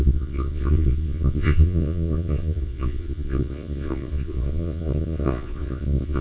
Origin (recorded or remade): remade